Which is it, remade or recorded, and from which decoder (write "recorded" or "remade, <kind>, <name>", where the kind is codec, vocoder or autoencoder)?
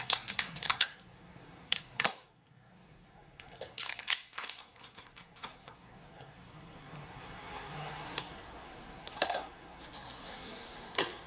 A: remade, codec, SNAC